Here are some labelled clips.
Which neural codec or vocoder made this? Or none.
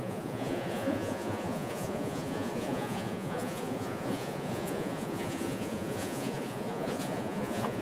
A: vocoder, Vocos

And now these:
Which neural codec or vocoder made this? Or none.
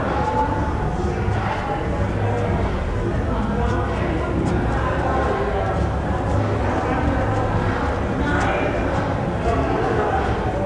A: none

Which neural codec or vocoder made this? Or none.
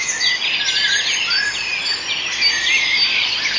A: none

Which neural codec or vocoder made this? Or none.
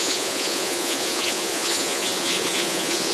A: vocoder, Vocos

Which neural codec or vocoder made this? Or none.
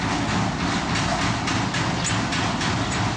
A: none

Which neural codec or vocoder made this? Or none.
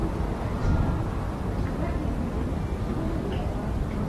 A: none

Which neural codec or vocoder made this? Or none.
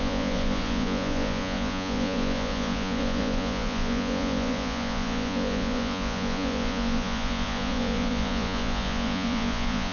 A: vocoder, Vocos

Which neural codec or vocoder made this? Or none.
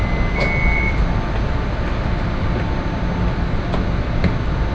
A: none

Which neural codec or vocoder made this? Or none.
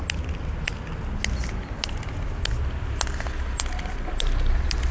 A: none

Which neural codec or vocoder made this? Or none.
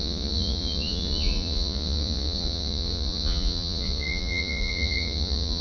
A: vocoder, Vocos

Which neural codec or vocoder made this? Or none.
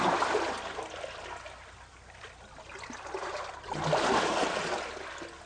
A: none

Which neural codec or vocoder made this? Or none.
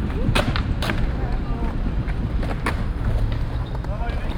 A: none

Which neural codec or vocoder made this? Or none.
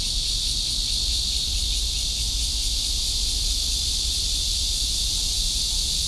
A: none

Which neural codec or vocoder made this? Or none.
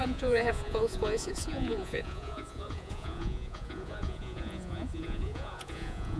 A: vocoder, Vocos